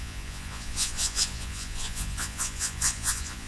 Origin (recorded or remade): remade